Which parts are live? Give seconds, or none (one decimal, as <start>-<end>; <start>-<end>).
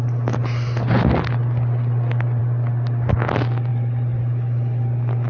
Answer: 0.0-3.7; 4.2-5.3